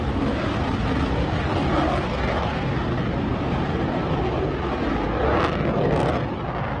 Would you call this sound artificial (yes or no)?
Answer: no